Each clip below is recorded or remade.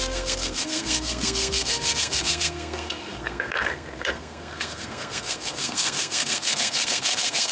remade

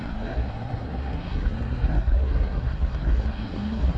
remade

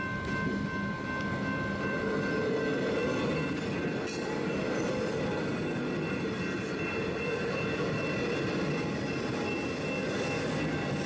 recorded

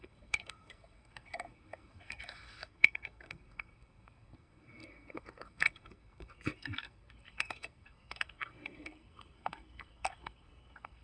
remade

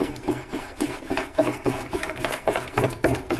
remade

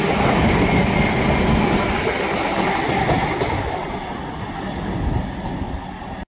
recorded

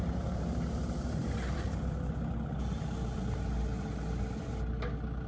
recorded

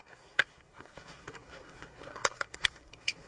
remade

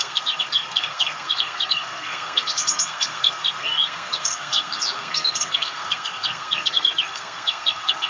remade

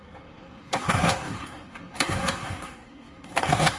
remade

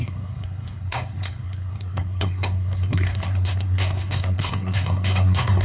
remade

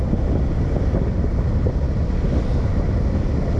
recorded